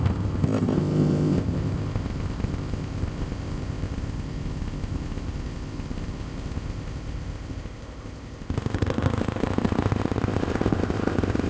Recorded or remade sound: remade